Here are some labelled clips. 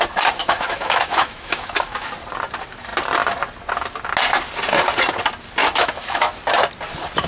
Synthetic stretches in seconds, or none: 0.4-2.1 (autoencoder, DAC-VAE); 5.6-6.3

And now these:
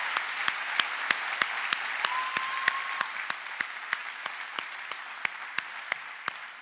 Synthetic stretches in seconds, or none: none

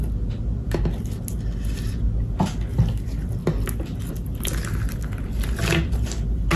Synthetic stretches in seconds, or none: none

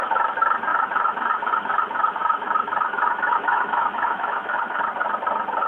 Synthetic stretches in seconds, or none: 0.7-1.5 (autoencoder, DAC-VAE); 2.2-4.7

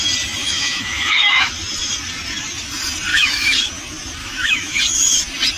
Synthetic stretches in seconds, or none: 0.4-1.5 (autoencoder, DAC-VAE); 3.1-3.7; 4.2-4.8